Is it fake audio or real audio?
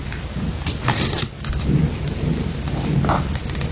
real